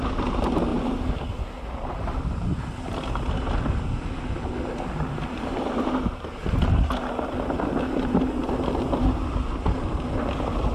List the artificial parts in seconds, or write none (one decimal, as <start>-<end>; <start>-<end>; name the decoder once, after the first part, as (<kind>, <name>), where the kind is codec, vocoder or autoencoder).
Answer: none